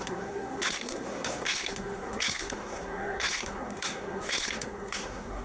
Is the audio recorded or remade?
remade